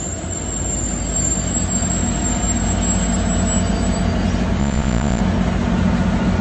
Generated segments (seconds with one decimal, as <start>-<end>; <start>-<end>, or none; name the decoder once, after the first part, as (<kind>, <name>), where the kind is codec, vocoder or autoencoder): 4.6-5.2 (vocoder, Vocos)